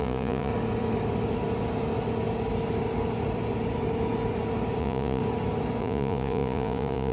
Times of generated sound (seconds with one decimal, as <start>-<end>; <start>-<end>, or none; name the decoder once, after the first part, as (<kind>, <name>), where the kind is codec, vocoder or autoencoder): 0.0-0.5 (vocoder, Vocos); 4.8-5.2; 5.8-7.1